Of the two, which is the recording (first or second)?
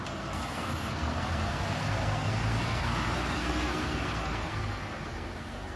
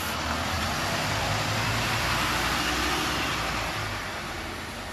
second